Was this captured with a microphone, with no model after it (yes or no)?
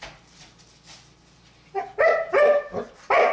yes